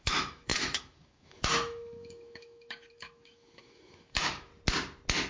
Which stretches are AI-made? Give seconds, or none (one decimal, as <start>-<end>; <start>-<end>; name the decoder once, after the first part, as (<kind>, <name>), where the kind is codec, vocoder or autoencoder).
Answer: 0.0-4.5 (autoencoder, DAC-VAE)